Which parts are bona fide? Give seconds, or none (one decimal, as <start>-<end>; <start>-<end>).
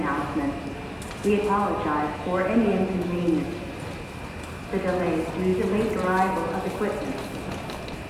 0.0-8.1